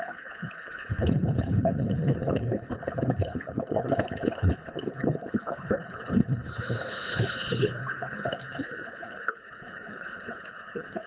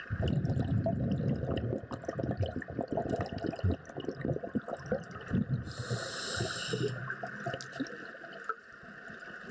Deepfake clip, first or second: first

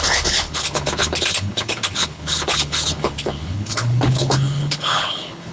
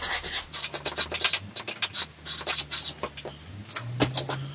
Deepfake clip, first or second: first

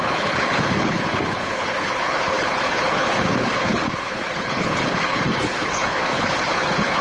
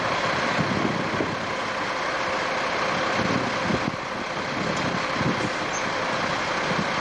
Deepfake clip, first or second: first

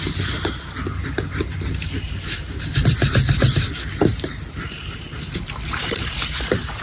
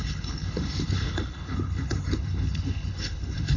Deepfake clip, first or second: second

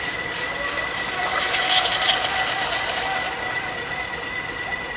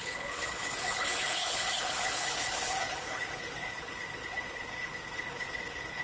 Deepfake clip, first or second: second